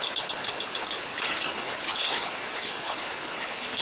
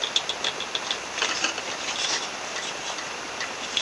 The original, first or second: second